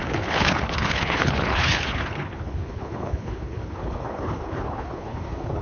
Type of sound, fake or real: fake